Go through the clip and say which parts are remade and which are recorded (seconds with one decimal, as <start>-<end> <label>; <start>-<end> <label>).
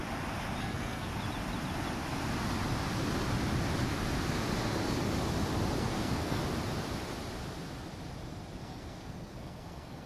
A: 0.0-0.6 recorded; 0.6-1.1 remade; 1.1-5.8 recorded; 5.8-6.4 remade; 6.4-8.6 recorded; 8.6-10.1 remade